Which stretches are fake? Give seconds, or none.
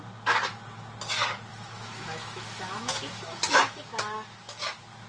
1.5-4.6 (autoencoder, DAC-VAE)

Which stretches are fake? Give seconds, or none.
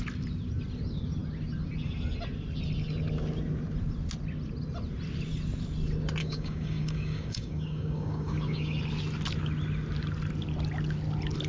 6.2-8.8 (codec, DAC)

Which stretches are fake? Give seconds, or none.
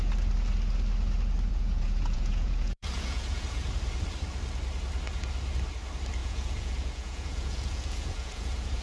1.5-3.7 (vocoder, Vocos); 6.2-8.8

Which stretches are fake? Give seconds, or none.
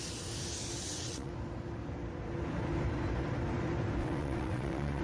0.8-1.3 (vocoder, WaveNeXt); 4.0-5.0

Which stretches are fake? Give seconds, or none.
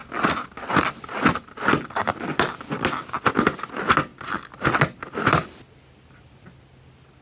0.0-1.7 (vocoder, BigVGAN v2); 4.1-5.6